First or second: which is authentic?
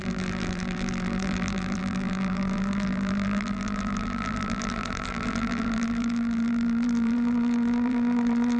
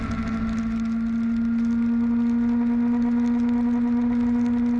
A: second